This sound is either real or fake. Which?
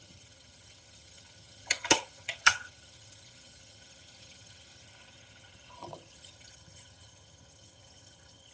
fake